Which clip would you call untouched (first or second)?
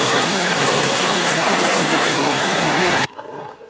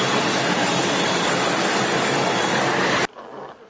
second